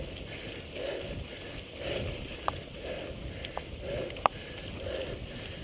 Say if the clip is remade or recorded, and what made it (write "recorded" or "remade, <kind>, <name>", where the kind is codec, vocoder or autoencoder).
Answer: recorded